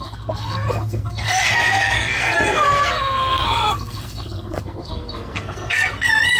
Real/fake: fake